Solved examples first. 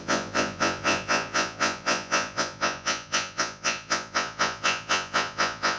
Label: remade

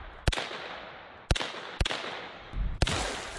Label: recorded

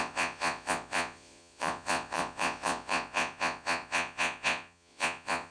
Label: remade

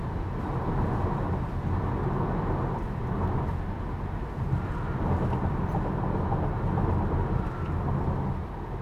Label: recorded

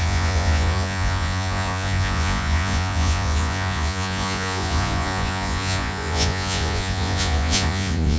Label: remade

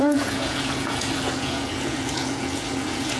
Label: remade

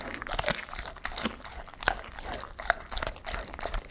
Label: recorded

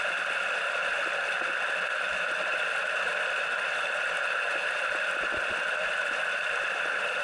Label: recorded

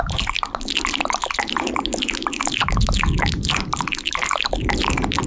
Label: recorded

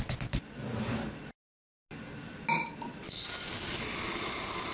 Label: recorded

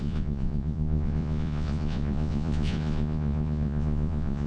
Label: remade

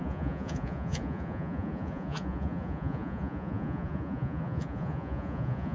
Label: remade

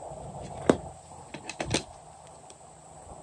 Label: recorded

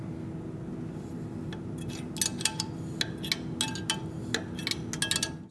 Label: recorded